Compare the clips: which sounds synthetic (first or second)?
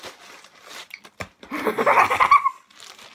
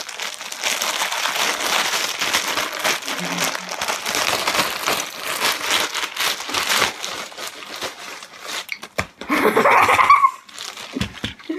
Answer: first